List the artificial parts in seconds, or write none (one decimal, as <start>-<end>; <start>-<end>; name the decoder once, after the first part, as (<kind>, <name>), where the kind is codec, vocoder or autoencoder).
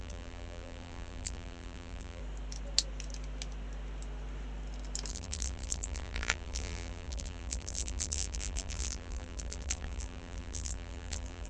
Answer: 0.0-2.2 (vocoder, BigVGAN v2); 5.1-11.5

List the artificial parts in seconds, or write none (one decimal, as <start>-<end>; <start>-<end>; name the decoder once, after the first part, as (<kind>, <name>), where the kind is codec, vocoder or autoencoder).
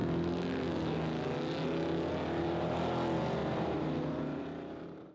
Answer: 3.4-5.1 (vocoder, BigVGAN v2)